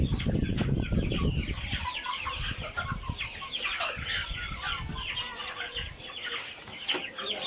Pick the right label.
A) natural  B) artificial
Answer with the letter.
A